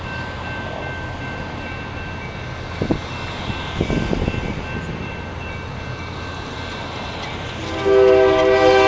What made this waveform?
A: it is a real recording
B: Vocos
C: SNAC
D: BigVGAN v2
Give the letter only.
A